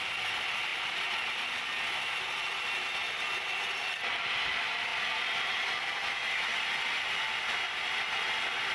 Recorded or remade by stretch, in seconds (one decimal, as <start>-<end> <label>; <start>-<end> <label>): 0.0-8.7 recorded